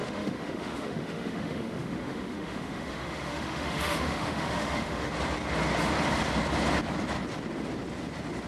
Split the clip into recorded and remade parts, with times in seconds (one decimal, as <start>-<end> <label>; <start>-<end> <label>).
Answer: 0.0-5.1 remade; 5.1-8.5 recorded